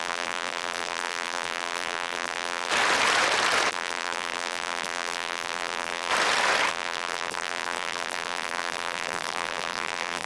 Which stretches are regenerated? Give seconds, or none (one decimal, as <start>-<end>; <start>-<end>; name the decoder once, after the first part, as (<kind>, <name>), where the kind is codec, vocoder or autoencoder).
0.0-2.7 (vocoder, BigVGAN v2); 3.7-6.1; 6.7-10.2